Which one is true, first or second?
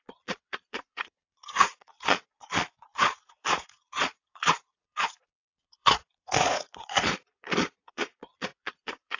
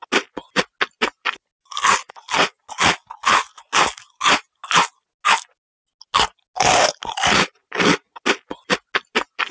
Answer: second